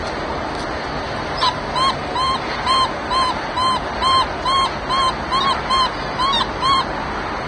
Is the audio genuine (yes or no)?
yes